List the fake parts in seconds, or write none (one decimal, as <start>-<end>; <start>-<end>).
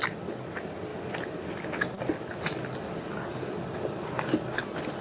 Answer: none